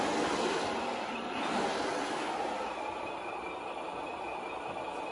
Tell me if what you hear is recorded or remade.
recorded